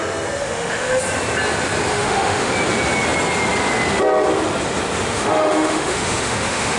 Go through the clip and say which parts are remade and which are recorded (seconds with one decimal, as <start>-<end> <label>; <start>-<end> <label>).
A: 0.0-0.4 recorded; 0.4-1.0 remade; 1.0-1.9 recorded; 1.9-2.5 remade; 2.5-5.1 recorded; 5.1-6.8 remade